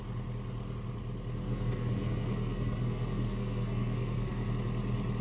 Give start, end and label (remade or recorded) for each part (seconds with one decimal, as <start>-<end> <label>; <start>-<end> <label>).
0.0-1.4 recorded; 1.4-4.5 remade; 4.5-5.2 recorded